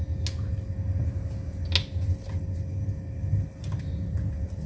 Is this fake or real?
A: real